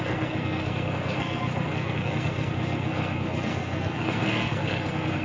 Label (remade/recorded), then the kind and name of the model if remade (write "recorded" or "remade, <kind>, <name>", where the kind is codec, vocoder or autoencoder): remade, codec, SNAC